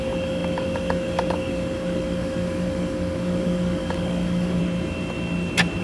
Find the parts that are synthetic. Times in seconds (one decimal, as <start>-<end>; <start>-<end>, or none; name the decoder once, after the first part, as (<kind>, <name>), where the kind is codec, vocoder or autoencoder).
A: 0.0-4.6 (codec, DAC)